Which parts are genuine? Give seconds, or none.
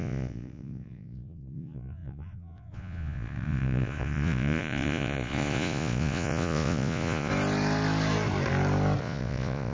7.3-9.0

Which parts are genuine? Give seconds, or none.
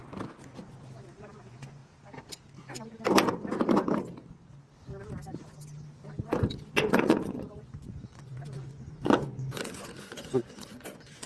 0.0-1.3; 1.8-6.7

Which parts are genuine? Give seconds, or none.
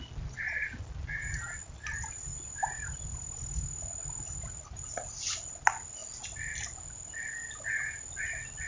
0.0-8.7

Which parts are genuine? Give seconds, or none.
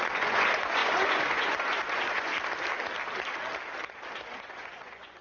2.3-4.4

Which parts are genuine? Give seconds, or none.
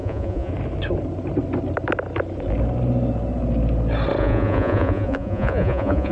0.5-4.2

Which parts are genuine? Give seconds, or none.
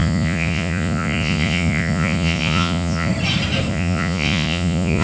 3.1-3.7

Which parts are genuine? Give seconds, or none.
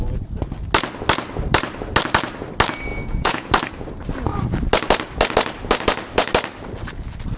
0.0-2.9; 3.5-7.4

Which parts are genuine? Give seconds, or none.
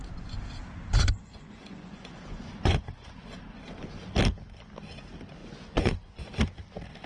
0.0-0.8; 3.4-5.4; 6.3-7.1